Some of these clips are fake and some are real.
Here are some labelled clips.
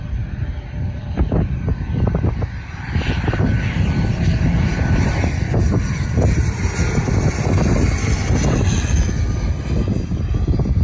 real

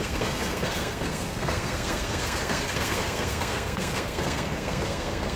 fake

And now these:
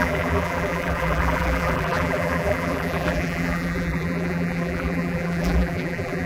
fake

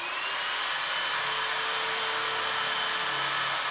real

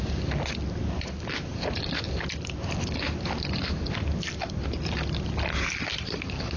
real